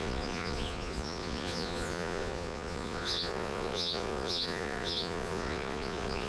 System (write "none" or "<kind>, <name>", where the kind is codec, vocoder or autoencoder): vocoder, Vocos